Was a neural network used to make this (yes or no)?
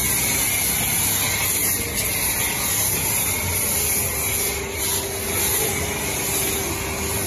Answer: no